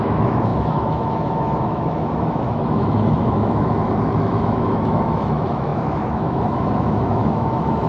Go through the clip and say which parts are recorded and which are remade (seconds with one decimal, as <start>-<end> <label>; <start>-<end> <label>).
0.0-7.9 remade